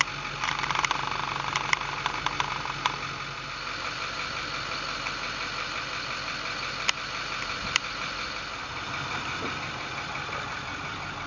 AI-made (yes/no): no